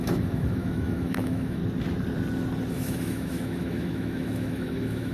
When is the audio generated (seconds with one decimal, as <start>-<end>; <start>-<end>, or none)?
0.0-1.6; 2.7-5.1

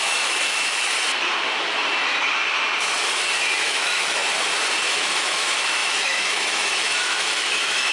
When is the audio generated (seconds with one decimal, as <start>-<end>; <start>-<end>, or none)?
0.0-0.9; 3.6-4.2; 4.9-7.9

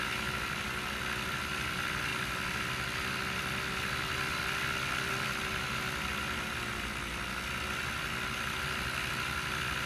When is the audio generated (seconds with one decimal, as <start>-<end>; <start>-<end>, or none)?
none

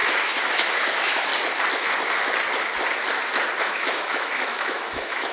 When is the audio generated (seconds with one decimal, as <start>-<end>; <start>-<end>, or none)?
0.0-1.3; 3.6-5.3

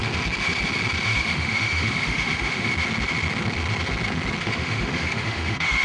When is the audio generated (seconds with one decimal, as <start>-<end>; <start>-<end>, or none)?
1.2-2.7; 4.4-5.8

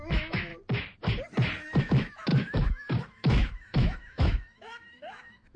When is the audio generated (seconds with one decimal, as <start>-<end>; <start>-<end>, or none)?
0.0-0.5; 1.8-5.6

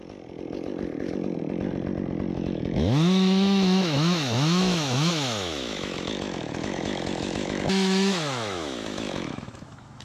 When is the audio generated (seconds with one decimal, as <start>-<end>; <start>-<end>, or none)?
2.3-10.0

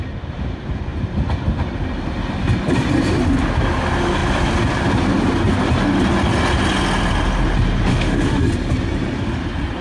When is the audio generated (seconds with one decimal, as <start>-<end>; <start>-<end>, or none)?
7.9-8.4